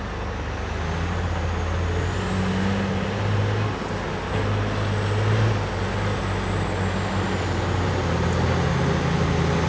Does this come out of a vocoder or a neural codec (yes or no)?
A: no